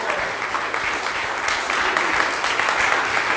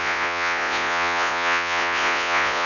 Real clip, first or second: first